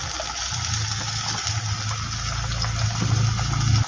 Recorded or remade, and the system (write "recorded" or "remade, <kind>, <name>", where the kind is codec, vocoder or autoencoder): recorded